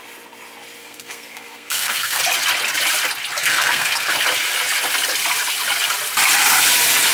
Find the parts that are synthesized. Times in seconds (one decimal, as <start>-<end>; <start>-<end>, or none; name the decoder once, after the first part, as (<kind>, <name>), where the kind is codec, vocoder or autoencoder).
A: 0.8-2.2 (codec, SNAC); 3.4-4.1